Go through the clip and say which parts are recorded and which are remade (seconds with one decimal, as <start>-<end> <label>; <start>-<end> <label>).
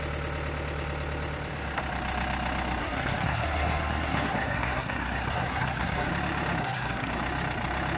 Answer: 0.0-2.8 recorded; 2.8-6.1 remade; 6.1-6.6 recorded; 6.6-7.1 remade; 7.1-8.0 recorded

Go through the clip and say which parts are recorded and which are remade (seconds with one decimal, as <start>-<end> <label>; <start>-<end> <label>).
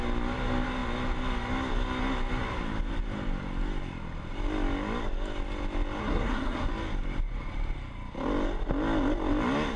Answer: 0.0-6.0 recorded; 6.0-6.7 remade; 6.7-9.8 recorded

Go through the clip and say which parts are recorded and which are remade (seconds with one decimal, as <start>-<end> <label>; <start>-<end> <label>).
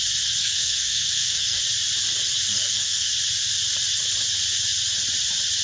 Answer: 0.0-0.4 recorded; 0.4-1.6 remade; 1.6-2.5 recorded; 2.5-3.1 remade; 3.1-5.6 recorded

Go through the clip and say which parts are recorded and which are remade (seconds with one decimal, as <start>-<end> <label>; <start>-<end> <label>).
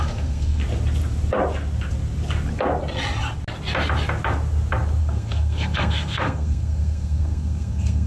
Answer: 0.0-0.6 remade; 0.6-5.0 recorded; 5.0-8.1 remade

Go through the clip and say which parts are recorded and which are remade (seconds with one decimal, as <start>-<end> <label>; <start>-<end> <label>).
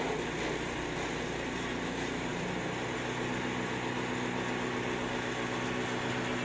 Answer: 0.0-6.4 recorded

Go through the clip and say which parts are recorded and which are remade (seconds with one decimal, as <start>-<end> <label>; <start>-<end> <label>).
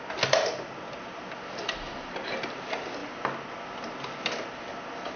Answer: 0.0-5.2 recorded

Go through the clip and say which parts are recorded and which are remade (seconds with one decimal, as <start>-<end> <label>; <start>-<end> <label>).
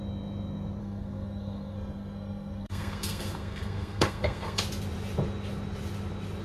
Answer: 0.0-0.8 recorded; 0.8-4.6 remade; 4.6-6.4 recorded